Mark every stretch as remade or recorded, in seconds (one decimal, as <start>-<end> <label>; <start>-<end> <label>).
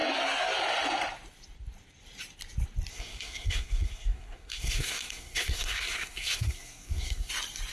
0.0-2.9 recorded; 2.9-7.3 remade; 7.3-7.7 recorded